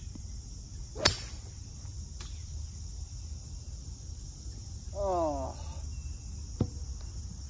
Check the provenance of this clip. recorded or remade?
recorded